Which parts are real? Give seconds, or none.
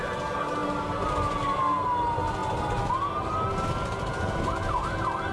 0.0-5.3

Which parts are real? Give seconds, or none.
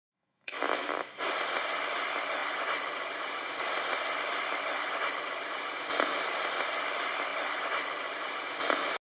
1.3-9.2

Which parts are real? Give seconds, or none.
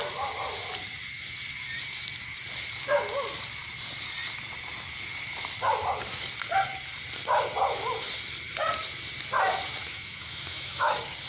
0.0-9.8; 10.9-11.3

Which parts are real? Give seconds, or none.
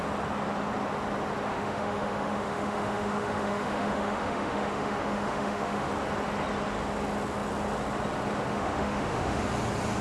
0.0-1.5; 5.9-8.5; 9.4-10.0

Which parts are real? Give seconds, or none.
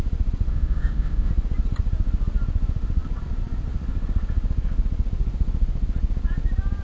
0.0-0.5; 1.3-6.8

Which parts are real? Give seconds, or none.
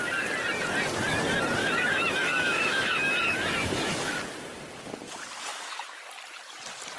0.0-1.6; 4.2-5.5; 6.0-7.0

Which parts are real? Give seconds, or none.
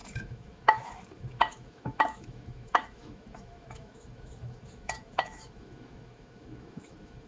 none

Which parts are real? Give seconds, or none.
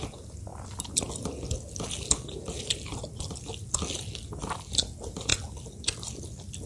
0.0-6.7